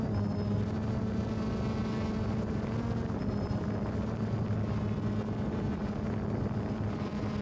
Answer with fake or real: real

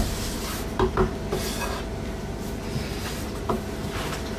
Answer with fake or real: real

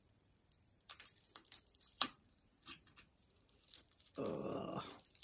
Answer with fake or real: fake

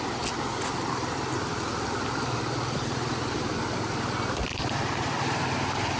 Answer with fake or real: real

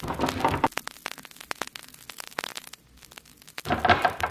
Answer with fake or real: real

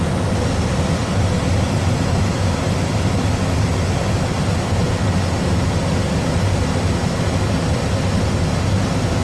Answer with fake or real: real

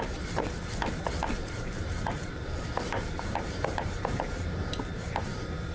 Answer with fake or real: fake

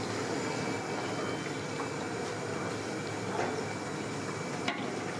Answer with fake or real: real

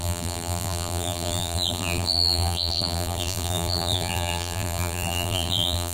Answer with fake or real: fake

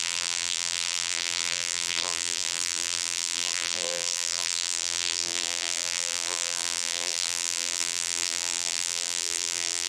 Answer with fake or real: fake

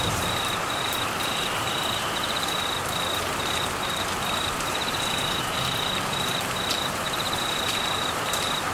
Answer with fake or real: fake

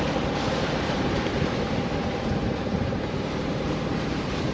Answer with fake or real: fake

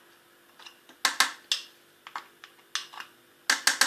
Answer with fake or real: real